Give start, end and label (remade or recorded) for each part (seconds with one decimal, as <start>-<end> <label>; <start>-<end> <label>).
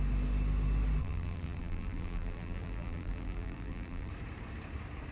0.0-1.0 recorded; 1.0-4.1 remade; 4.1-5.1 recorded